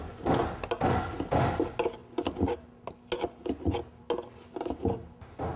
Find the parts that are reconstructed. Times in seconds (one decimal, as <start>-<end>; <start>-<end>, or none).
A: none